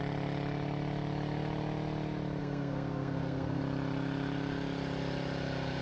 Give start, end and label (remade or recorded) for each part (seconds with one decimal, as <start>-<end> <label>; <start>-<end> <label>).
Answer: 0.0-2.4 recorded; 2.4-3.6 remade; 3.6-5.8 recorded